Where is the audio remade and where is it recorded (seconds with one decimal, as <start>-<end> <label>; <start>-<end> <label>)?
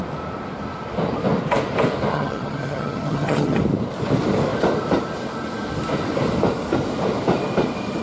0.0-2.1 recorded; 2.1-3.6 remade; 3.6-8.0 recorded